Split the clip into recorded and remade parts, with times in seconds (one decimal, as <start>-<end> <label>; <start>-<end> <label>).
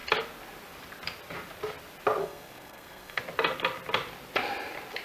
0.0-2.2 recorded; 2.2-3.2 remade; 3.2-5.0 recorded